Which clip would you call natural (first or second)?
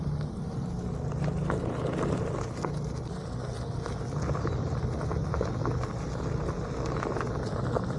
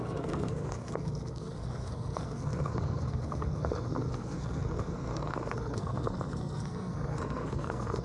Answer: first